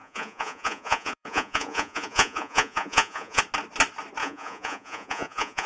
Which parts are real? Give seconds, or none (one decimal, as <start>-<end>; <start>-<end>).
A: 3.4-4.2